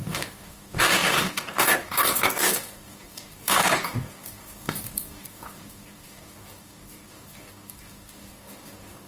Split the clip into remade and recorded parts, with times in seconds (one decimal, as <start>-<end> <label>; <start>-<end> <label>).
0.0-9.1 remade